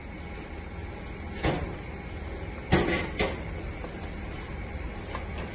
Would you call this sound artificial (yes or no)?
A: no